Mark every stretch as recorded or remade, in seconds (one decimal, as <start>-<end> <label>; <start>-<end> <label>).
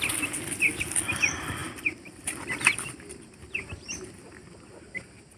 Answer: 0.0-5.4 recorded